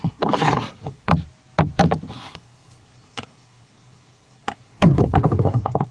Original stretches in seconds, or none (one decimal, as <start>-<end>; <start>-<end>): 1.1-2.1